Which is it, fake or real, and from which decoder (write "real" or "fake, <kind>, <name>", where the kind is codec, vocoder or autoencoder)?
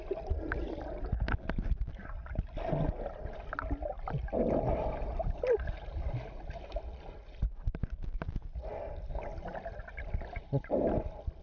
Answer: real